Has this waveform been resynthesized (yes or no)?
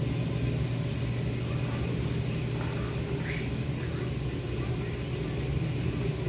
no